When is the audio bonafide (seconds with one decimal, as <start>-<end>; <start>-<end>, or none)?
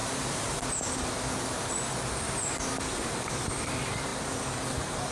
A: 0.0-3.1; 4.1-5.1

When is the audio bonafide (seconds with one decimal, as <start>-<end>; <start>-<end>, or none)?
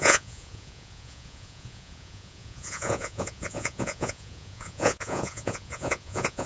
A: none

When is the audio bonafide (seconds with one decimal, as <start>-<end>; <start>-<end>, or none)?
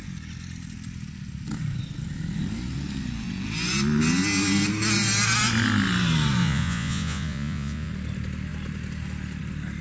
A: 0.0-6.4; 7.9-9.8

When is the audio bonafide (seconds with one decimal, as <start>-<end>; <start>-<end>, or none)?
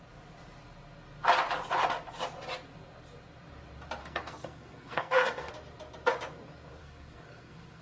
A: 0.0-4.0; 5.5-6.8